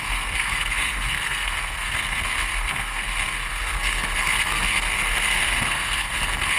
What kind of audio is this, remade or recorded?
remade